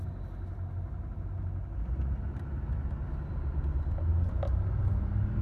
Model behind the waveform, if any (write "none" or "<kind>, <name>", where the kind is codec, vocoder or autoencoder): none